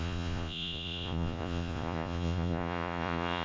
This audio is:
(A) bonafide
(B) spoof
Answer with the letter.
B